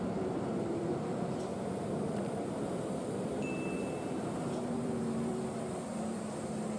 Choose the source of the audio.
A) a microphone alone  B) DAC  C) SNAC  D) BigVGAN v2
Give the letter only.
D